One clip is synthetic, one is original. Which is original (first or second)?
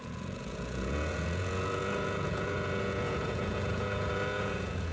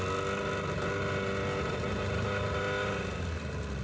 second